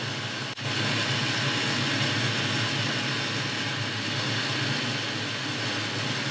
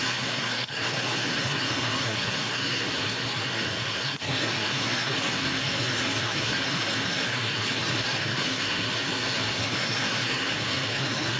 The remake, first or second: second